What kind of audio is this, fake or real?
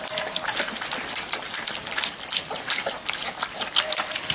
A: real